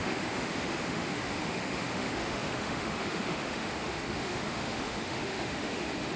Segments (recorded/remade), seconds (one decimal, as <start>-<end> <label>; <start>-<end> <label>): 0.0-6.2 remade